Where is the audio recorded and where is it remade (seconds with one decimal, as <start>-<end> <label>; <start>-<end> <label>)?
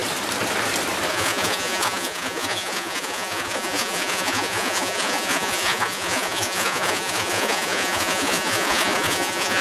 0.0-1.1 recorded; 1.1-9.6 remade